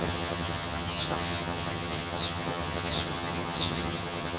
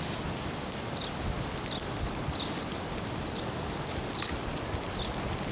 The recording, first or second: second